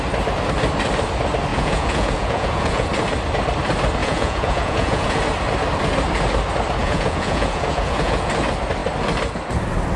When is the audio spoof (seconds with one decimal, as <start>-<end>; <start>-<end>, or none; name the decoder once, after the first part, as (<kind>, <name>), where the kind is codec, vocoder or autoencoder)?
1.5-2.9 (vocoder, Vocos); 4.0-5.2; 6.8-8.3